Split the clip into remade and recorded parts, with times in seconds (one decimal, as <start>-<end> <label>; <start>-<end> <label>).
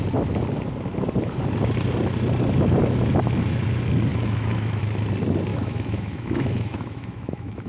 0.0-4.1 recorded; 4.1-4.8 remade; 4.8-5.5 recorded; 5.5-7.7 remade